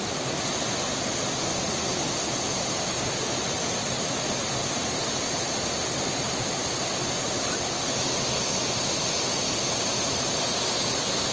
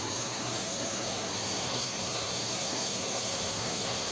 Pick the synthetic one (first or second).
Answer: second